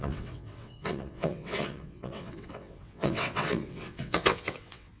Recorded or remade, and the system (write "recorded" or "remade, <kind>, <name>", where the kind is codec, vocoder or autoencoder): remade, vocoder, WaveNeXt